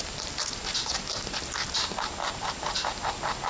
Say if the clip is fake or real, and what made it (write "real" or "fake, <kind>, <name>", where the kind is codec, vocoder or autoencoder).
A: real